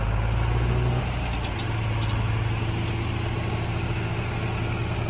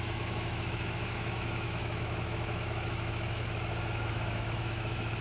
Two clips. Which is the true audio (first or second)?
first